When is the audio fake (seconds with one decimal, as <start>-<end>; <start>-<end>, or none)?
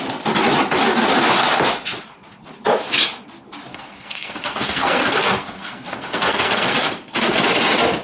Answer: 3.7-7.4